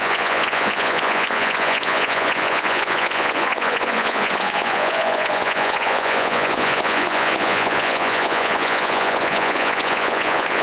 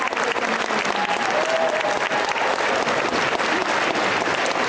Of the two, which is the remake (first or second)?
first